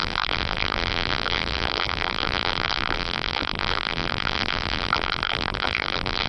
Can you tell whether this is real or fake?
fake